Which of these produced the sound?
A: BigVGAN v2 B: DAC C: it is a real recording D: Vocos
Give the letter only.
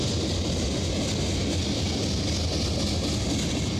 C